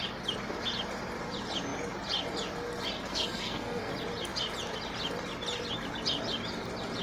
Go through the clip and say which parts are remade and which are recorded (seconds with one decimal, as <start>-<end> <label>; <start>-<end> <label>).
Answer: 0.0-3.1 recorded; 3.1-3.9 remade; 3.9-7.0 recorded